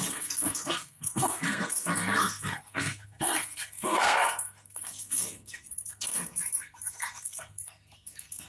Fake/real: fake